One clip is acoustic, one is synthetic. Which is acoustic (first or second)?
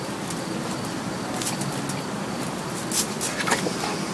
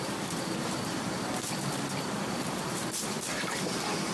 first